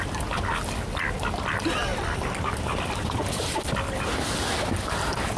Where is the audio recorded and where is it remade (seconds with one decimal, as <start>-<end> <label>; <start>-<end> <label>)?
0.0-5.4 recorded